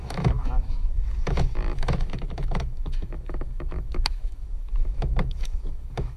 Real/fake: fake